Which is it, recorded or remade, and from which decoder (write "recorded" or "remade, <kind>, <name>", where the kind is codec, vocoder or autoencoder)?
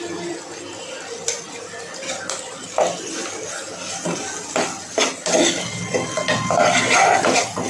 recorded